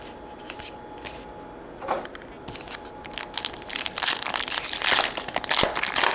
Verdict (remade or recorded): recorded